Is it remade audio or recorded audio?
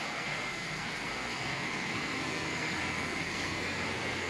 remade